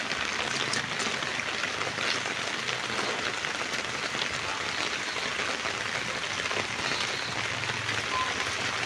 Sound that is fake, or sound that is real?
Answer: real